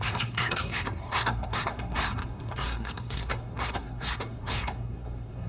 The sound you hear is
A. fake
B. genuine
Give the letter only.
A